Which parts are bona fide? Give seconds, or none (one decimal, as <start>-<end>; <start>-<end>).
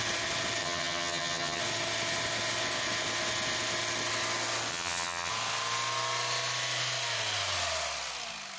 0.0-0.6; 1.6-4.7; 5.3-8.6